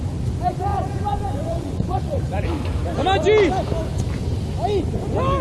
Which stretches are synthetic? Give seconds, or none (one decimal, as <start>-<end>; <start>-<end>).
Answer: 0.7-2.2

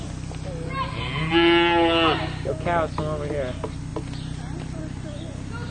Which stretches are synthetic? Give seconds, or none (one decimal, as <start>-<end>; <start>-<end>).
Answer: none

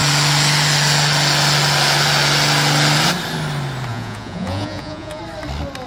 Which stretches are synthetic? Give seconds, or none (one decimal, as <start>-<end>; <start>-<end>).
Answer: 3.9-5.2

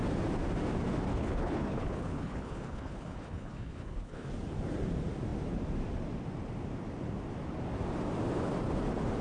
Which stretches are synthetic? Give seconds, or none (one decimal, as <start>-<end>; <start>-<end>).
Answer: 1.1-4.3

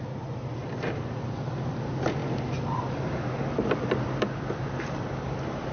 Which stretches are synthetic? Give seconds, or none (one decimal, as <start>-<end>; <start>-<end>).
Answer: 2.2-5.7

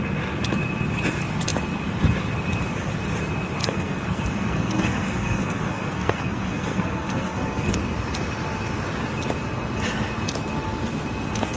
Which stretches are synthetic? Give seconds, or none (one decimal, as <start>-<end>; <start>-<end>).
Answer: 3.6-7.7

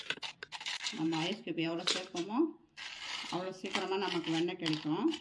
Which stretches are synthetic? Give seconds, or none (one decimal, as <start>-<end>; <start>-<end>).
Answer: 0.0-2.6; 4.7-5.2

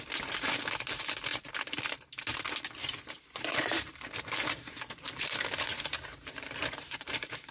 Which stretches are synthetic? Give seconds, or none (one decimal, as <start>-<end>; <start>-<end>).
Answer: 1.3-2.1; 2.8-7.5